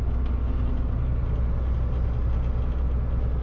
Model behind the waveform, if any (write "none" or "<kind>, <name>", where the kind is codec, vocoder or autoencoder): none